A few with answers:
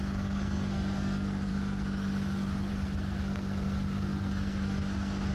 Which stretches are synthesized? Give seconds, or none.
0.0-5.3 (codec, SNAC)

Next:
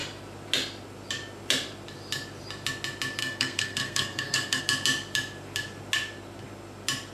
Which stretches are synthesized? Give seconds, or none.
3.2-4.6 (codec, SNAC)

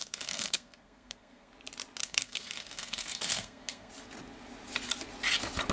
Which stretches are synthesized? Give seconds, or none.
0.0-1.5 (codec, SNAC); 2.0-3.9

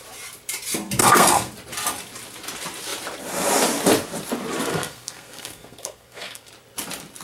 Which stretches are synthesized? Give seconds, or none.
1.0-1.5 (codec, SNAC); 4.7-6.5

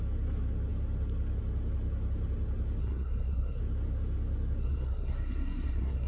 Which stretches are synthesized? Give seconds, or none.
2.8-3.6 (codec, SNAC); 4.6-6.1

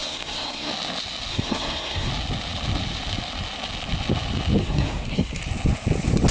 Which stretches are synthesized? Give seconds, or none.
0.0-0.7 (codec, SNAC); 1.3-2.1; 4.6-5.4

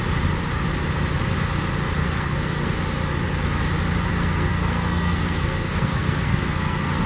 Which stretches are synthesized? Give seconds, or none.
2.0-2.7 (codec, SNAC); 4.1-7.1

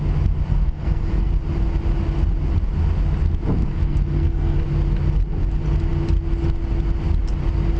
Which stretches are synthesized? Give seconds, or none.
0.5-1.3 (codec, SNAC); 3.6-4.6